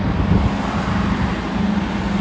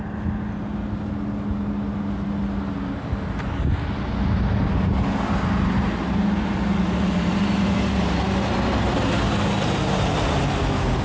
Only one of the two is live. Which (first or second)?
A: second